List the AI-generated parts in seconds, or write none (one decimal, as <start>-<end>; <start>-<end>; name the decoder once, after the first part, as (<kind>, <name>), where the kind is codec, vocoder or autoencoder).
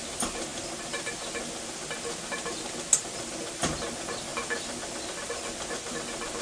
none